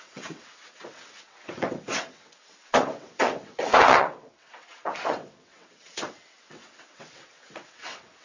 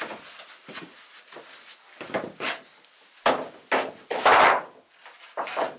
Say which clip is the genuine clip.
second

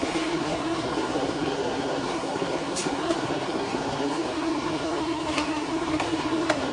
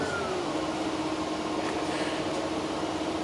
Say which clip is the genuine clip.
second